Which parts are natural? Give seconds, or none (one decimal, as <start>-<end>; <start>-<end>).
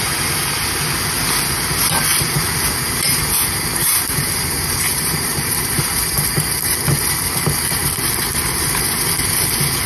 0.0-2.1; 6.5-9.9